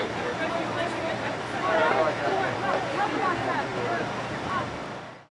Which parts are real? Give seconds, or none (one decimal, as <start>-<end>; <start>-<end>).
1.8-2.3